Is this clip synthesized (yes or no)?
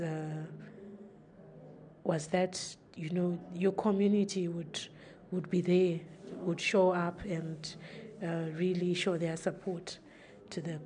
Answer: no